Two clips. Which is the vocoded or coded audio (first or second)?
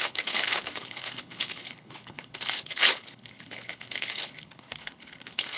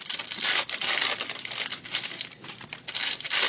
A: first